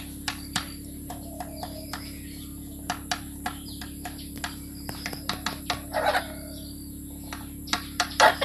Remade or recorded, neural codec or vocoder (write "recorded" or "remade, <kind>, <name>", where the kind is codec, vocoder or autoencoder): recorded